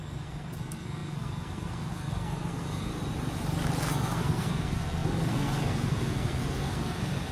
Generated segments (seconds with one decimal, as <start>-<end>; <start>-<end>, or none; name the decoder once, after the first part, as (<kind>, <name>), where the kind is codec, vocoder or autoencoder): 0.0-2.9 (codec, SNAC); 3.8-7.3